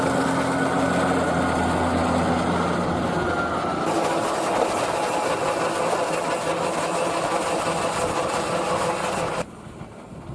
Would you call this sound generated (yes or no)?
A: no